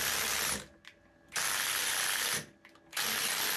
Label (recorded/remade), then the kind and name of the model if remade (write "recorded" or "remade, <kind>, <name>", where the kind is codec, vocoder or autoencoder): recorded